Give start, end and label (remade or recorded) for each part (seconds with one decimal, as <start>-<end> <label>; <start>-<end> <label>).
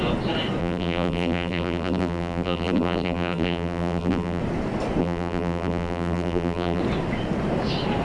0.0-0.6 recorded; 0.6-4.4 remade; 4.4-5.0 recorded; 5.0-6.8 remade; 6.8-8.0 recorded